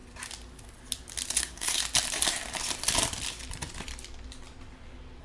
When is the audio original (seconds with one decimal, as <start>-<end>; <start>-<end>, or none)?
0.0-1.4; 1.8-5.2